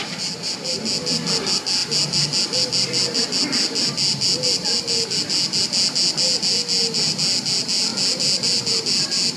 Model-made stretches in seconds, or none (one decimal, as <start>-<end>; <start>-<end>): none